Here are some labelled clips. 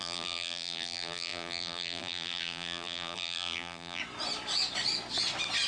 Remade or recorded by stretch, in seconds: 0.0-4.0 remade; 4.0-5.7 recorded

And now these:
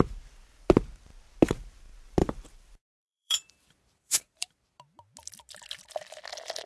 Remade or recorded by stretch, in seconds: 0.0-2.2 recorded; 2.2-4.6 remade; 4.6-6.7 recorded

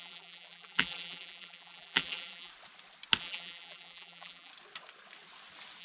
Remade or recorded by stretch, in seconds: 0.0-2.5 remade; 2.5-3.2 recorded; 3.2-4.5 remade; 4.5-5.8 recorded

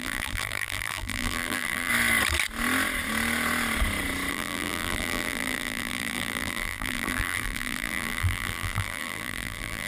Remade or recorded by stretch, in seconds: 0.0-1.9 remade; 1.9-4.3 recorded; 4.3-9.9 remade